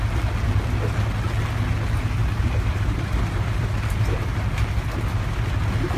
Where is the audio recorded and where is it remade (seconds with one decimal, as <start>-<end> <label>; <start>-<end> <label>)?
0.0-2.2 recorded; 2.2-4.6 remade; 4.6-6.0 recorded